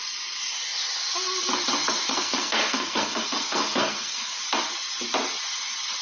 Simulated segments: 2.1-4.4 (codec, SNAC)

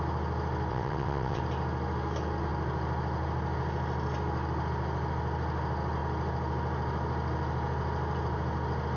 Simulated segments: 0.7-1.4 (vocoder, WaveNeXt)

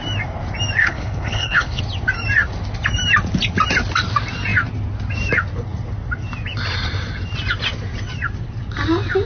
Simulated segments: 0.8-1.8 (codec, HILCodec)